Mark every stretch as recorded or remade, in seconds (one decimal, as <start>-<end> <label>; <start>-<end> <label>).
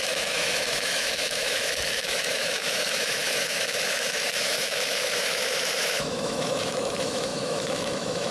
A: 0.0-8.3 remade